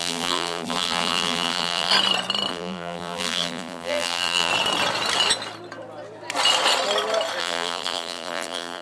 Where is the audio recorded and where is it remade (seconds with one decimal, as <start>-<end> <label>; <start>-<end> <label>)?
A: 0.0-1.9 remade; 1.9-2.5 recorded; 2.5-4.5 remade; 4.5-7.4 recorded; 7.4-8.8 remade